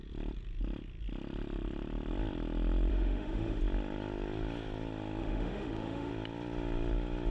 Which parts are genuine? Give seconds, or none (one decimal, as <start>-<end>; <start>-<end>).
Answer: 0.0-2.9; 3.6-5.2; 6.1-7.3